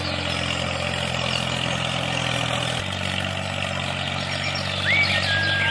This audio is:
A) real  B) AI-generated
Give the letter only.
A